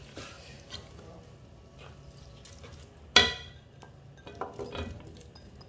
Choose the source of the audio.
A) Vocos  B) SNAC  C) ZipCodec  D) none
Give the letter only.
D